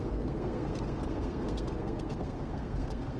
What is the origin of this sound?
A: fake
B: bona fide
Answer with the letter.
A